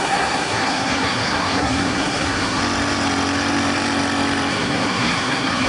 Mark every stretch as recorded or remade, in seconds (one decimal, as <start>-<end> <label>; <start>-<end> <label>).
0.0-2.6 remade; 2.6-4.5 recorded; 4.5-5.7 remade